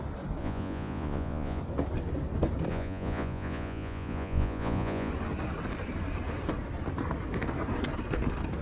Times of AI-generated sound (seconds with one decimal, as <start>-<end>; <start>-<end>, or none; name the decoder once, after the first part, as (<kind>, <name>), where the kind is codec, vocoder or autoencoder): 0.4-1.6 (vocoder, Vocos); 2.7-5.1